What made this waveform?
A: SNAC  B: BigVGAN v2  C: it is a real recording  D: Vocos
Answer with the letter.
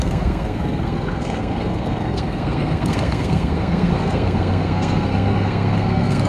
A